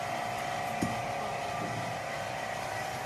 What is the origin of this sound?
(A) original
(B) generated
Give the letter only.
A